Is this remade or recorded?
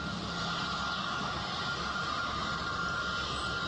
recorded